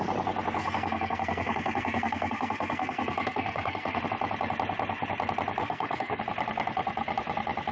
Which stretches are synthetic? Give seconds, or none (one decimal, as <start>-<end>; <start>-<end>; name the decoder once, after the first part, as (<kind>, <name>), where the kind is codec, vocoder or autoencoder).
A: 0.6-4.0 (codec, SNAC); 5.6-6.2